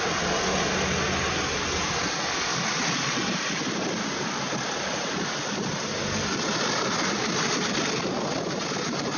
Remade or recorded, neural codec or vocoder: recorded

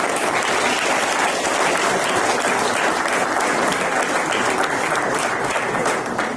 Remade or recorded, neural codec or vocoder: recorded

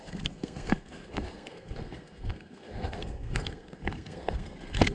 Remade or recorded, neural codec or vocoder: remade, codec, SNAC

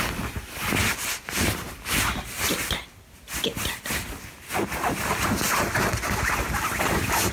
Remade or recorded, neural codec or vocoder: recorded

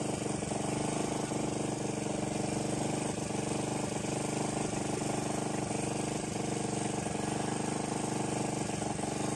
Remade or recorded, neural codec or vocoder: recorded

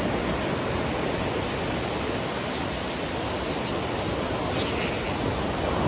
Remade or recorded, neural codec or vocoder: recorded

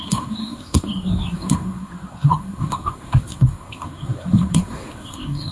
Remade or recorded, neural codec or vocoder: remade, codec, SNAC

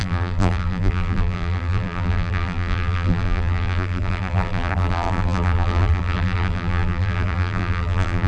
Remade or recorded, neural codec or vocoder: remade, vocoder, BigVGAN v2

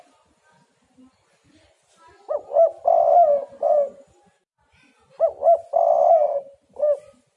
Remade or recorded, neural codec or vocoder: recorded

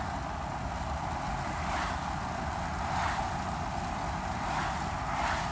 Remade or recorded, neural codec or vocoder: recorded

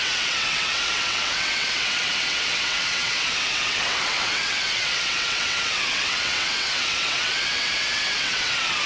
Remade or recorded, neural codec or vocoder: remade, vocoder, WaveNeXt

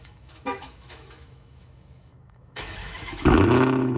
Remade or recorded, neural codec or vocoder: remade, autoencoder, DAC-VAE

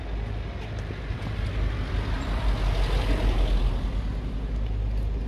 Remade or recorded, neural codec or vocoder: recorded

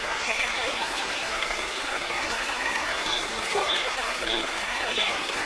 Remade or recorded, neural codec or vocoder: remade, codec, SNAC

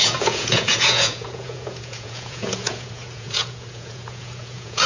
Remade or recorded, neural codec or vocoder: remade, vocoder, Vocos